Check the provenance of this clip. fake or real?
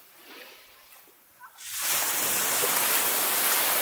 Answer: real